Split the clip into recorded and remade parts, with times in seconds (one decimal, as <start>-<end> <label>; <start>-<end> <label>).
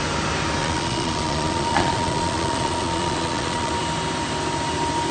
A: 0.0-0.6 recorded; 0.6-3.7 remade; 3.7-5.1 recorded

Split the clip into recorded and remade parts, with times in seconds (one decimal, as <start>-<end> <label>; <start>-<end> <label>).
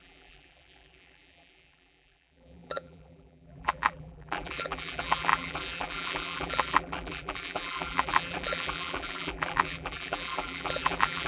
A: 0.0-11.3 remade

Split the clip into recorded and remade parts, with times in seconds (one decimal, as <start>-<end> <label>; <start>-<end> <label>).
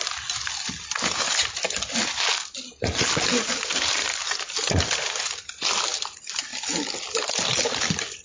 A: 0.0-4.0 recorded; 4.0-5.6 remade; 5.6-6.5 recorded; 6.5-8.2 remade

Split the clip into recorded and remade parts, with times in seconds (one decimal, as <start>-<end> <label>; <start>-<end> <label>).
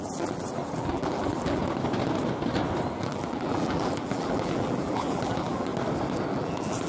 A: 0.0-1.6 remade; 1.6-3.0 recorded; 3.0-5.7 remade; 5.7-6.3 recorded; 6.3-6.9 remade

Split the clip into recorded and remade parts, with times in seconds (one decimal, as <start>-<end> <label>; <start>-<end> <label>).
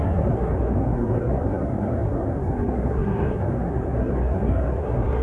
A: 0.0-5.2 remade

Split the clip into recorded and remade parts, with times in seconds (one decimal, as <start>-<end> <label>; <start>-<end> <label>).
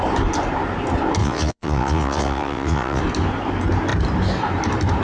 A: 0.0-1.2 recorded; 1.2-3.0 remade; 3.0-5.0 recorded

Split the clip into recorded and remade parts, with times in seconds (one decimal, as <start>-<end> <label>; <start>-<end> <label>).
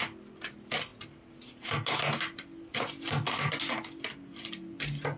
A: 0.0-5.2 recorded